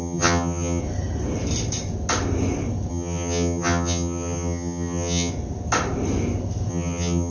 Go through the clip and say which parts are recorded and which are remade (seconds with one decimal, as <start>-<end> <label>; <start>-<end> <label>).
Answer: 0.0-0.8 remade; 0.8-2.9 recorded; 2.9-5.3 remade; 5.3-6.7 recorded; 6.7-7.3 remade